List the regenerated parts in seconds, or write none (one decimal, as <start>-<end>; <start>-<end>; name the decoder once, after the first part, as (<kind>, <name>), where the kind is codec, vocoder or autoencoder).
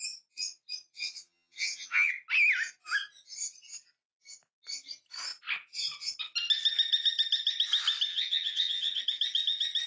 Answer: 1.0-2.1 (vocoder, HiFi-GAN); 8.1-9.0